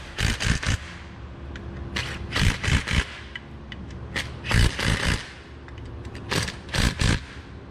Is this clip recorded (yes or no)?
yes